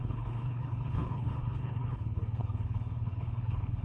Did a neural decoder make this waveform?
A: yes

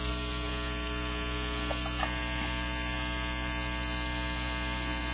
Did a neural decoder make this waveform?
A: no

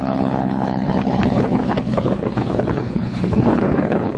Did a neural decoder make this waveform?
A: yes